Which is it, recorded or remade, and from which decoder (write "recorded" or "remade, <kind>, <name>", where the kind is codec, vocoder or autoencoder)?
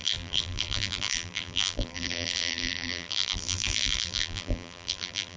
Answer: remade, vocoder, BigVGAN v2